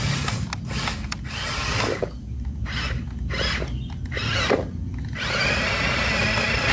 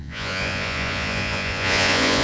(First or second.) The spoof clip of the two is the second